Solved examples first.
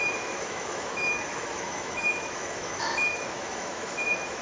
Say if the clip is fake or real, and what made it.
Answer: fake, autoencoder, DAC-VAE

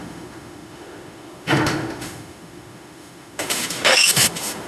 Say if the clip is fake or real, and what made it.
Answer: fake, autoencoder, DAC-VAE